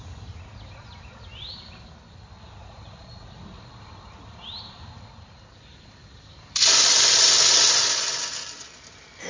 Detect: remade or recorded recorded